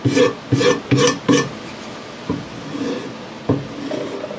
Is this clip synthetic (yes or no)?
no